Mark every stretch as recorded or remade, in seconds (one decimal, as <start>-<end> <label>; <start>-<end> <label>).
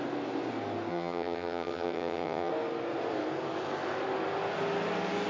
0.0-0.9 recorded; 0.9-2.5 remade; 2.5-5.3 recorded